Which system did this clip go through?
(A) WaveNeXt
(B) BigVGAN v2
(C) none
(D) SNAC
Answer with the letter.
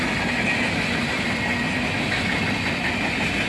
C